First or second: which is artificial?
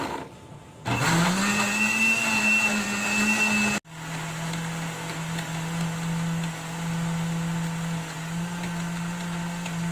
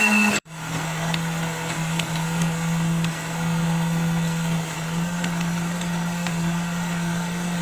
second